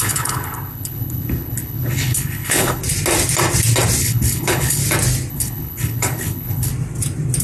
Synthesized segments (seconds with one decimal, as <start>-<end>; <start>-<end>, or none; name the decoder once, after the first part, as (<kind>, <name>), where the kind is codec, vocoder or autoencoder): 0.0-2.8 (codec, HILCodec); 4.0-4.8; 5.3-6.7